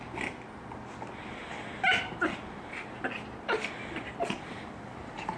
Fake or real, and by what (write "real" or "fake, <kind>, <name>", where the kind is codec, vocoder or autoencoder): real